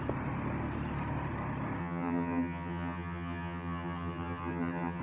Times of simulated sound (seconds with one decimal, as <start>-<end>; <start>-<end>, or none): 1.8-5.0